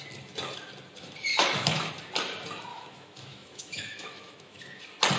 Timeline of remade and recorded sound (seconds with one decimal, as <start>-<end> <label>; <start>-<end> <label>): 0.0-1.3 recorded; 1.3-1.9 remade; 1.9-2.7 recorded; 2.7-4.8 remade; 4.8-5.2 recorded

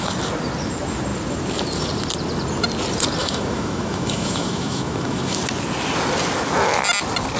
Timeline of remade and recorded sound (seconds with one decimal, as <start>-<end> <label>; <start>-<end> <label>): 0.0-3.2 recorded; 3.2-5.4 remade; 5.4-7.4 recorded

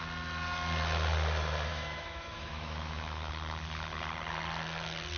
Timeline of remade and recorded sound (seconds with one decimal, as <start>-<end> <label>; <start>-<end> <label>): 0.0-1.7 recorded; 1.7-3.3 remade; 3.3-5.2 recorded

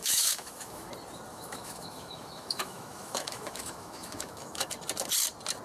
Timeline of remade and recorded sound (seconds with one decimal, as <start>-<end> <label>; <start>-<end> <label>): 0.0-0.9 remade; 0.9-1.3 recorded; 1.3-4.7 remade; 4.7-5.6 recorded

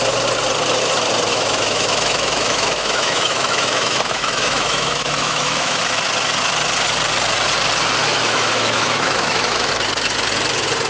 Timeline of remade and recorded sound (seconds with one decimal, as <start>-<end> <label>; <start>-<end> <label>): 0.0-1.3 recorded; 1.3-5.8 remade; 5.8-8.0 recorded; 8.0-9.7 remade; 9.7-10.9 recorded

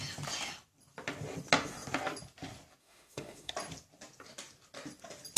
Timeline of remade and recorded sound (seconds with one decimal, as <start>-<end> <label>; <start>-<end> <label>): 0.0-2.8 recorded; 2.8-3.5 remade; 3.5-5.4 recorded

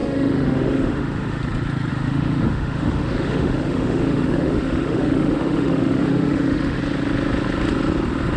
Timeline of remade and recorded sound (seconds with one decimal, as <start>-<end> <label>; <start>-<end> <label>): 0.0-1.4 remade; 1.4-1.9 recorded; 1.9-6.8 remade; 6.8-8.4 recorded

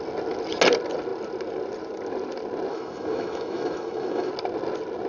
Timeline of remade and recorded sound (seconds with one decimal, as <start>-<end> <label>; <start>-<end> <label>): 0.0-2.7 recorded; 2.7-4.3 remade; 4.3-5.1 recorded